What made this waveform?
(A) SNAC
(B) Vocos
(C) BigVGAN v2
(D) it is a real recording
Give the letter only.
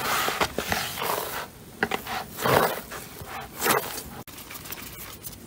D